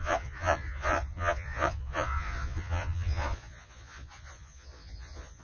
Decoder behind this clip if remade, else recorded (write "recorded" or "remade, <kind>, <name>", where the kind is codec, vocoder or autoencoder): remade, vocoder, Vocos